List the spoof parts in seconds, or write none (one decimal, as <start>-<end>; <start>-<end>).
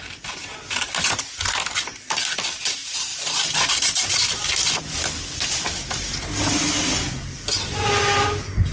none